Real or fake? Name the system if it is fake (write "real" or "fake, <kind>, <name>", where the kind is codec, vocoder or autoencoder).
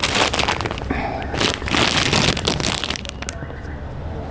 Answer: real